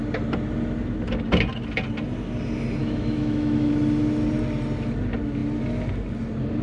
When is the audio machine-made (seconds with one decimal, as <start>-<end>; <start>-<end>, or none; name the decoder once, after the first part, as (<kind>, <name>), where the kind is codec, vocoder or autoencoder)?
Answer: 2.8-3.7 (autoencoder, DAC-VAE)